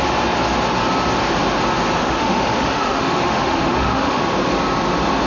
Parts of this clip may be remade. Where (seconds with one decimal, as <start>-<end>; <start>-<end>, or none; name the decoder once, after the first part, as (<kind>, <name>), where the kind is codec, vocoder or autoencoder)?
2.0-4.2 (autoencoder, DAC-VAE)